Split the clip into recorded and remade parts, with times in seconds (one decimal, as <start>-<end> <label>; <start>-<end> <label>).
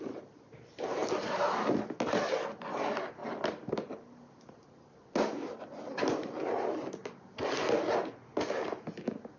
0.0-9.4 recorded